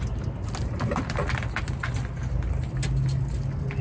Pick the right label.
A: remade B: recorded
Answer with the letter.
B